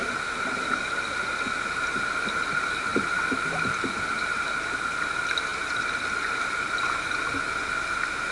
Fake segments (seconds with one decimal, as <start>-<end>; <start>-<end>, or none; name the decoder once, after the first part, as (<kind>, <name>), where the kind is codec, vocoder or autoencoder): 2.9-3.4 (vocoder, BigVGAN v2); 5.5-7.3